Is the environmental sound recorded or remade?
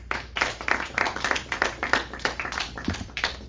remade